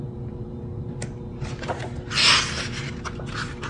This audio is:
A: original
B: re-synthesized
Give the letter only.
A